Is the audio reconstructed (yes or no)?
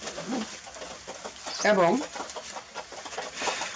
no